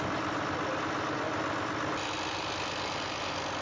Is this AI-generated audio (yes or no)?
no